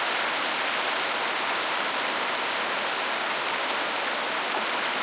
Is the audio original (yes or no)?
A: yes